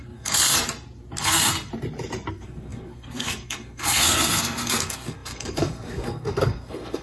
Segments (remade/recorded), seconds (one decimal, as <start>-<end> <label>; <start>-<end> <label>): 0.0-0.6 remade; 0.6-1.2 recorded; 1.2-1.7 remade; 1.7-2.3 recorded; 2.3-7.0 remade